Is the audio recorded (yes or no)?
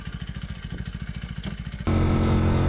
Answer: yes